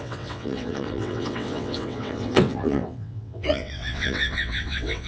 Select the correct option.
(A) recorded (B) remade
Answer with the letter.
B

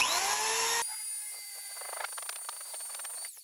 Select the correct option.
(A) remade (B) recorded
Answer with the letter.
B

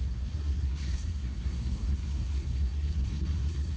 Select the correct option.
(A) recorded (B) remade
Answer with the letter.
B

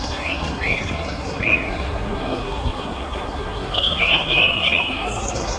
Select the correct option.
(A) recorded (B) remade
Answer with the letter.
B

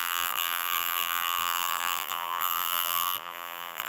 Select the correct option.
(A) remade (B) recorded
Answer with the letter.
A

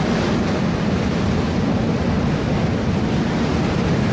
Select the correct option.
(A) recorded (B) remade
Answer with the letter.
A